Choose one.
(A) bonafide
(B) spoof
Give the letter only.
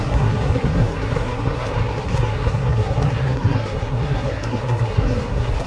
B